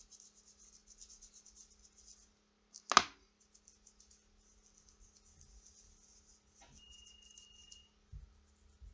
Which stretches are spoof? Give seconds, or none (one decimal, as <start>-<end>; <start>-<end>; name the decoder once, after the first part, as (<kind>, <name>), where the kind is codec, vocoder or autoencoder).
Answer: none